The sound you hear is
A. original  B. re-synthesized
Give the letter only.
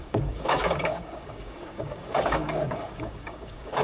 B